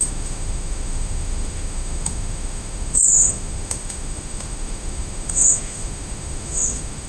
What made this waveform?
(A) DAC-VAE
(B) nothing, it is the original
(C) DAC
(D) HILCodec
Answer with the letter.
A